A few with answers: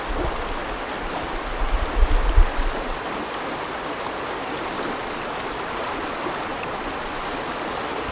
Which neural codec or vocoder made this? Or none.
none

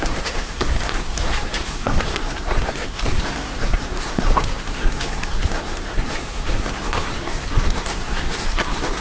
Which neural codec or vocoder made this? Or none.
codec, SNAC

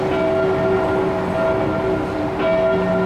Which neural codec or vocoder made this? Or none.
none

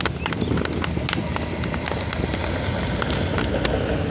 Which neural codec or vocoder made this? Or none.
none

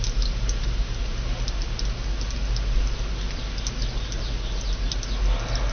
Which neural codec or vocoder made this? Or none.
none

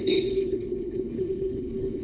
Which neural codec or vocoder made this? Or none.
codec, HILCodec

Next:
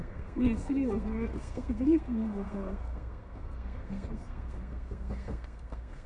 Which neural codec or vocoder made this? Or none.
codec, SNAC